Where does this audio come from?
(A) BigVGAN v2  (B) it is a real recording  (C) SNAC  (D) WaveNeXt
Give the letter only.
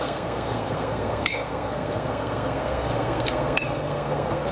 C